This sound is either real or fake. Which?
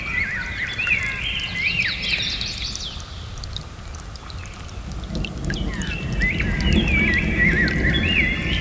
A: real